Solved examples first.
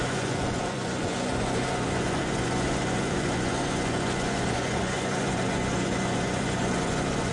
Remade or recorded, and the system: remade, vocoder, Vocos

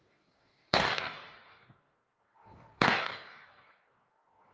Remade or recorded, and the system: remade, codec, DAC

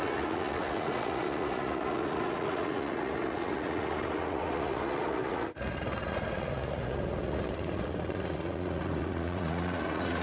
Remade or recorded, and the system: remade, vocoder, Vocos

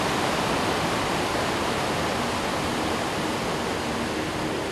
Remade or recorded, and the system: recorded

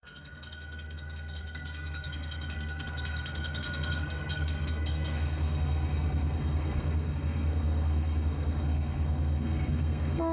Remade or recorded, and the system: remade, codec, SNAC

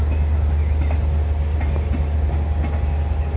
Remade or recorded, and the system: recorded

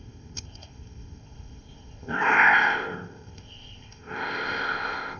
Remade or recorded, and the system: remade, codec, ZipCodec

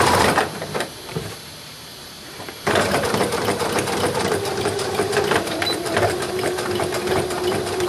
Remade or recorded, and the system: remade, vocoder, BigVGAN v2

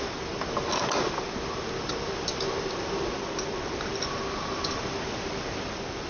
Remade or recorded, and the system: recorded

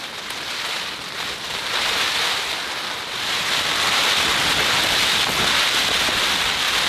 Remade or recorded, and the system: recorded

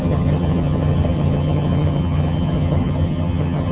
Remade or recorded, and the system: remade, vocoder, HiFi-GAN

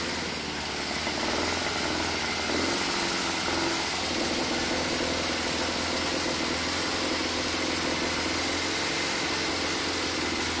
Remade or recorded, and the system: recorded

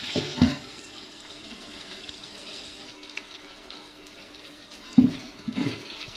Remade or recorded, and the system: remade, codec, SNAC